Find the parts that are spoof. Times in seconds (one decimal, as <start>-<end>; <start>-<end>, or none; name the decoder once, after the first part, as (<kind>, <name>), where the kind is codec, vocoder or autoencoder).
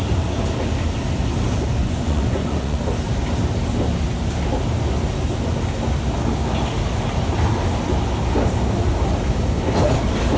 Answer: 1.8-2.8 (vocoder, Vocos)